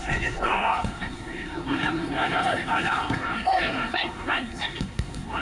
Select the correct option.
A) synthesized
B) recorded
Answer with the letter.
A